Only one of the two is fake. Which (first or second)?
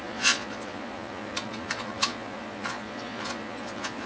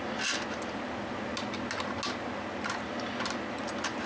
first